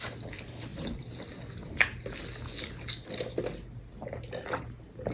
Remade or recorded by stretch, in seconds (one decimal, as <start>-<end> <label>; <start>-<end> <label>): 0.0-5.1 recorded